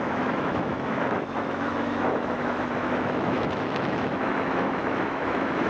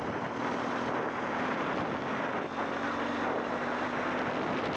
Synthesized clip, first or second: first